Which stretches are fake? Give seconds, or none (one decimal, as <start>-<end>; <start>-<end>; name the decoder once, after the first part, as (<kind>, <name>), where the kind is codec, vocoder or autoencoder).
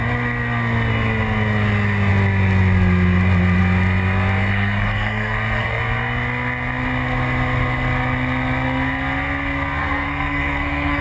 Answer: 4.5-5.8 (codec, SNAC); 9.8-11.0